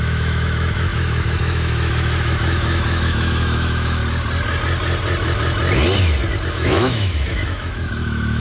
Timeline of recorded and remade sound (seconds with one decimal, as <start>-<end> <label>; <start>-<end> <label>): 0.0-4.0 remade; 4.0-6.5 recorded; 6.5-8.4 remade